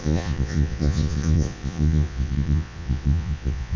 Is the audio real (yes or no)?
no